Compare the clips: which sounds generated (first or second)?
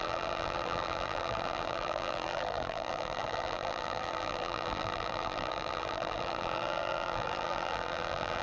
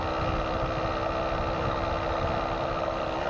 first